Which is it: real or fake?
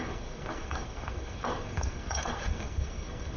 fake